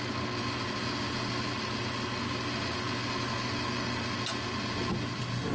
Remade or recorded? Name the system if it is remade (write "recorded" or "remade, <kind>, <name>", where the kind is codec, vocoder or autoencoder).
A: recorded